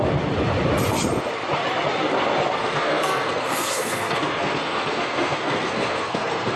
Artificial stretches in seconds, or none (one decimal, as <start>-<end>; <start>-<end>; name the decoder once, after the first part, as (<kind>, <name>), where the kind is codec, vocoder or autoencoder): 2.6-6.6 (codec, SNAC)